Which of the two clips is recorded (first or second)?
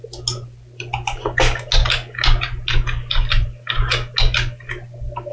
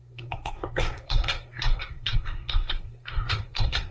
first